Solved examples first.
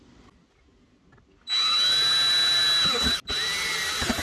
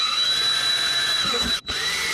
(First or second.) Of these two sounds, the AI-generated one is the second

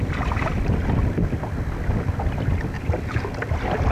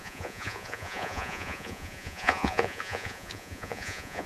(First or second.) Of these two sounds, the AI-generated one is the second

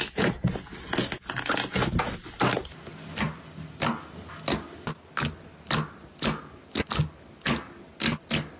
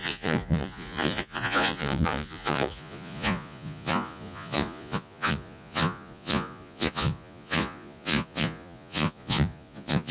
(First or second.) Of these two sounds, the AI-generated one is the second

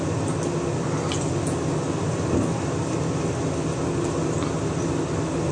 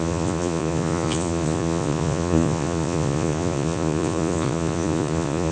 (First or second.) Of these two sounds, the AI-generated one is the second